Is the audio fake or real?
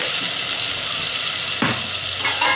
real